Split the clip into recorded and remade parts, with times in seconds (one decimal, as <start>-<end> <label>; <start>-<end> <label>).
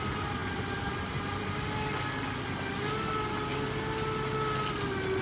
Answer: 0.0-5.2 recorded